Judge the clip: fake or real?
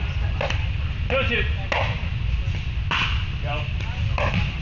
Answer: real